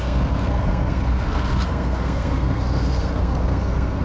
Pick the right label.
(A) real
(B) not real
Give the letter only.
B